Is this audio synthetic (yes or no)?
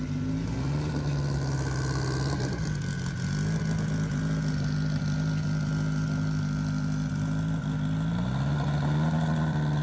no